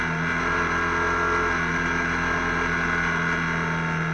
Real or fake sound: real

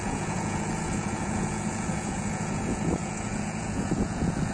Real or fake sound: fake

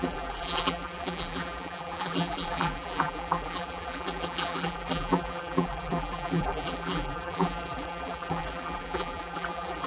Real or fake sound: fake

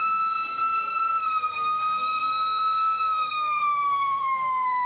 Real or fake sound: fake